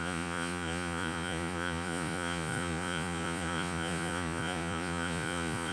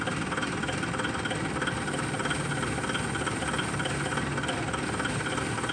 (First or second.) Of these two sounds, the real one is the second